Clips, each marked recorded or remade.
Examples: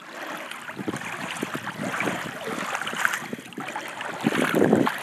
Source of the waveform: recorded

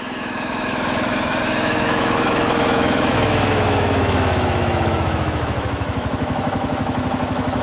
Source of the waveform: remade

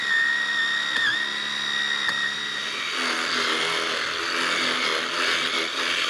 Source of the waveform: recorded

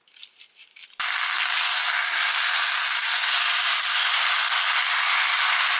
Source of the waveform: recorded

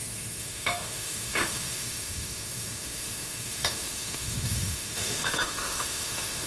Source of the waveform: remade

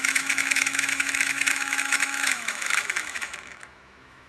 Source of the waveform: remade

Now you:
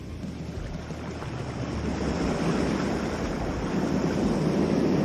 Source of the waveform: recorded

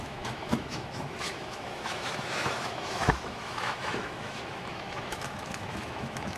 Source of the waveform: remade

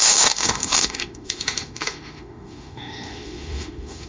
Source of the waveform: remade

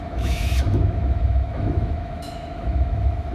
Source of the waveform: remade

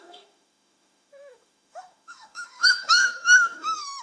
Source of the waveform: remade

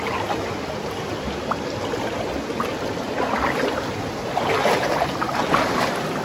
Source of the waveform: recorded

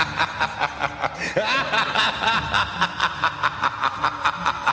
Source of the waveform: recorded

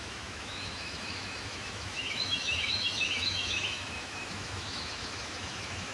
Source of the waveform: remade